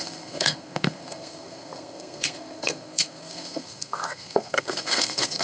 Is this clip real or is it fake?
fake